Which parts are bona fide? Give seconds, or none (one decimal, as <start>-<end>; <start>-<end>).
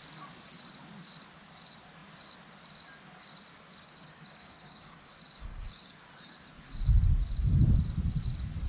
0.0-3.8; 5.1-5.5; 6.0-8.7